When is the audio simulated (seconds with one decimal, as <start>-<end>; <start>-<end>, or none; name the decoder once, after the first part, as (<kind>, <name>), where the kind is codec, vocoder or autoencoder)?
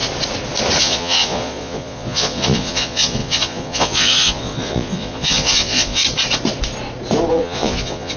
0.8-6.0 (vocoder, Vocos); 7.3-8.2